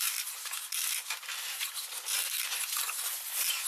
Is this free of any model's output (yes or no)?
yes